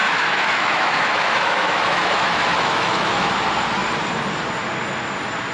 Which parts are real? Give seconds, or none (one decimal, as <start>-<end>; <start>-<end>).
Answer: 3.3-5.5